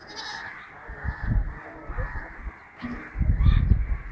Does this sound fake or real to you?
real